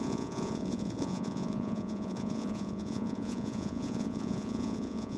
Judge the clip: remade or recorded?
remade